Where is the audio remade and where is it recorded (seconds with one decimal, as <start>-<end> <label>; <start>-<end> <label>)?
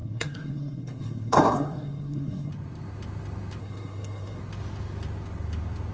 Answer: 0.0-2.5 remade; 2.5-3.6 recorded; 3.6-4.4 remade; 4.4-5.9 recorded